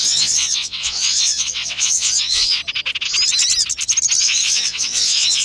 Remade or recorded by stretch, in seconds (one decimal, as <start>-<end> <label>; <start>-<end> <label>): 0.0-2.6 remade; 2.6-4.2 recorded; 4.2-5.4 remade